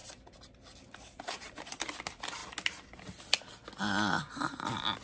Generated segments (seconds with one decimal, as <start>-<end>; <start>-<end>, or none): 0.0-1.8